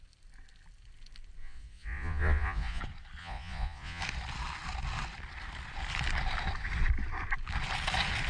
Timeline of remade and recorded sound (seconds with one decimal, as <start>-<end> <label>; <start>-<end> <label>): 0.0-1.4 recorded; 1.4-2.8 remade; 2.8-3.2 recorded; 3.2-4.0 remade; 4.0-8.3 recorded